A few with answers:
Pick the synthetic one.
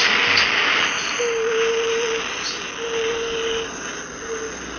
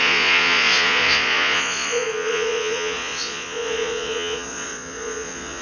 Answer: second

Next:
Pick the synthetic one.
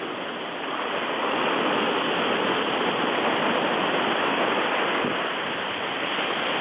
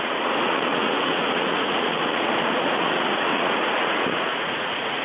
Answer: second